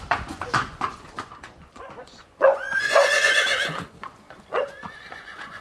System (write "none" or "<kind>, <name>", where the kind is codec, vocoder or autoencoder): vocoder, Vocos